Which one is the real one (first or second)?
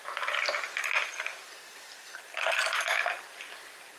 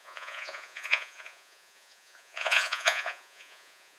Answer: first